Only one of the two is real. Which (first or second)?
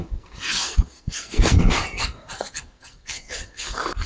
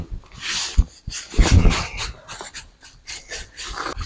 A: second